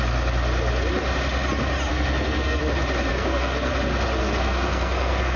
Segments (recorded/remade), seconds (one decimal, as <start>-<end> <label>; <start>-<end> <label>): 0.0-1.9 recorded; 1.9-2.6 remade; 2.6-3.1 recorded; 3.1-3.7 remade; 3.7-4.2 recorded; 4.2-5.4 remade

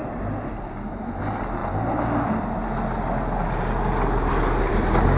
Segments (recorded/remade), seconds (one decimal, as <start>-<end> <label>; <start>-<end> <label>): 0.0-5.2 recorded